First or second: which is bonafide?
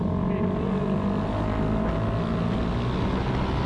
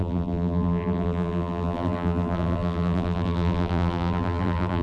first